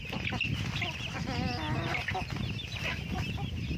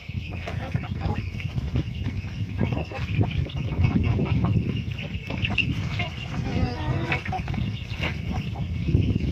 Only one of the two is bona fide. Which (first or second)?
first